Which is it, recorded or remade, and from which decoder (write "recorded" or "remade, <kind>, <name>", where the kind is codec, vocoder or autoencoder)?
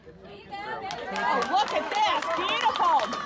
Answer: recorded